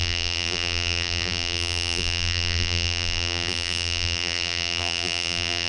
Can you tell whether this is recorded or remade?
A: remade